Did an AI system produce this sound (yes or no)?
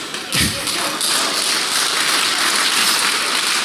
no